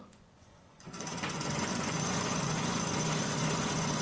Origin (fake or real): fake